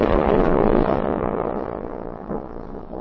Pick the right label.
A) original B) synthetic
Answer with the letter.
B